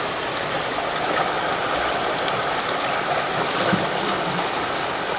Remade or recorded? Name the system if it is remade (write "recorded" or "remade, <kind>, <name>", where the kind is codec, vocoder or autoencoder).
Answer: recorded